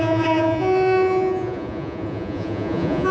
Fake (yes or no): yes